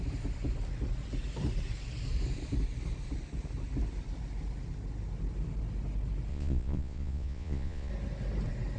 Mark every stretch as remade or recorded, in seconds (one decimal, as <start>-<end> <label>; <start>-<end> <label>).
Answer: 0.0-6.3 recorded; 6.3-7.9 remade; 7.9-8.8 recorded

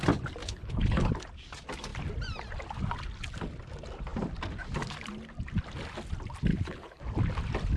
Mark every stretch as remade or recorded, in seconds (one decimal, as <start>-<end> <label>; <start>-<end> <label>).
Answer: 0.0-0.4 recorded; 0.4-1.1 remade; 1.1-6.5 recorded; 6.5-7.0 remade; 7.0-7.8 recorded

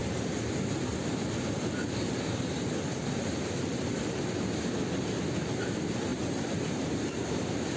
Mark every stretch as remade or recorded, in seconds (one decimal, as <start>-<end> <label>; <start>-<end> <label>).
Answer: 0.0-2.9 recorded; 2.9-4.2 remade; 4.2-6.1 recorded; 6.1-6.9 remade; 6.9-7.8 recorded

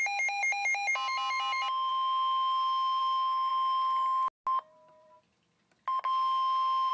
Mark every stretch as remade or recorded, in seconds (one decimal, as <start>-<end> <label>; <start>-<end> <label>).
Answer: 0.0-6.9 recorded

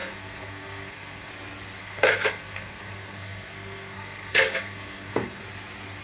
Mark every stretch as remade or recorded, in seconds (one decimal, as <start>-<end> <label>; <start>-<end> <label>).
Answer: 0.0-1.3 remade; 1.3-1.8 recorded; 1.8-5.4 remade; 5.4-6.0 recorded

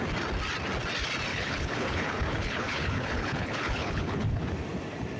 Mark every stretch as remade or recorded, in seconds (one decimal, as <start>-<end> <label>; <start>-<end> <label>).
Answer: 0.0-1.3 recorded; 1.3-4.4 remade; 4.4-5.2 recorded

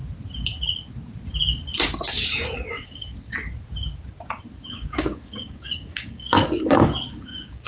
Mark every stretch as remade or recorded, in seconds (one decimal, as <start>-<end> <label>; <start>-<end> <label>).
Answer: 0.0-2.1 recorded; 2.1-3.3 remade; 3.3-4.7 recorded; 4.7-7.7 remade